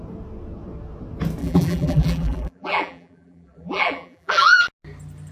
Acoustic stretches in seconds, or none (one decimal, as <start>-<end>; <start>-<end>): 0.0-1.4; 4.6-5.3